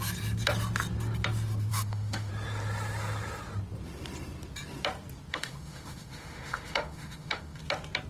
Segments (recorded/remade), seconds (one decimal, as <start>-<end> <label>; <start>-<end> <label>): 0.0-1.7 recorded; 1.7-2.3 remade; 2.3-5.3 recorded; 5.3-7.6 remade; 7.6-8.1 recorded